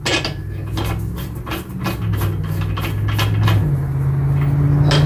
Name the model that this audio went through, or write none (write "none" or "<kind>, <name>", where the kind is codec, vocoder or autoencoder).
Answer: none